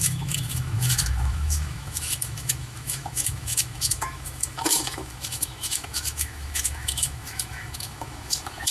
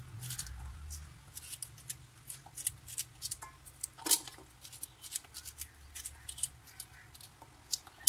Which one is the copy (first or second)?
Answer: first